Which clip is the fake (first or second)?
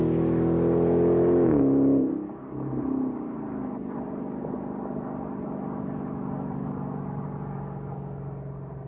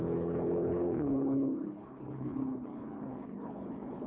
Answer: second